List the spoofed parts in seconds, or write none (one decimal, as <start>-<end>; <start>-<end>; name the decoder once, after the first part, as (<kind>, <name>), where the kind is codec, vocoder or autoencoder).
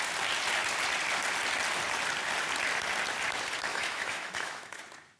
3.7-4.8 (autoencoder, DAC-VAE)